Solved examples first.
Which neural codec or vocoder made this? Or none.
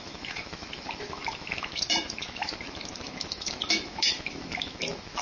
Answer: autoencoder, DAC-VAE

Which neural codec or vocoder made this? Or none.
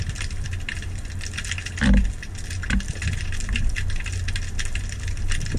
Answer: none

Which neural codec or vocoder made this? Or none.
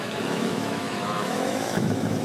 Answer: autoencoder, DAC-VAE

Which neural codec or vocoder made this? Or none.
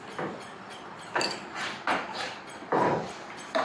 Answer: none